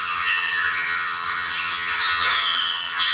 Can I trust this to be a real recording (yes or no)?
no